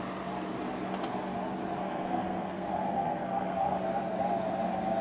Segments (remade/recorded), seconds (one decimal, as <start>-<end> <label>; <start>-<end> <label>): 0.0-1.8 recorded; 1.8-3.8 remade; 3.8-5.0 recorded